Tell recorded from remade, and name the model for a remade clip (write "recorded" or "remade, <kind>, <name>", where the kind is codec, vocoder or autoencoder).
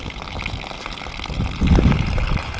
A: recorded